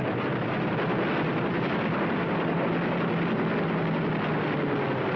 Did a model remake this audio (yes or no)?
no